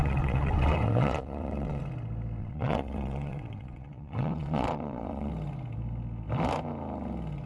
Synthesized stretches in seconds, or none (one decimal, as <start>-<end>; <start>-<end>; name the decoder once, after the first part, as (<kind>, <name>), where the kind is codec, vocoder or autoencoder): 0.0-1.8 (vocoder, WaveNeXt); 2.4-5.3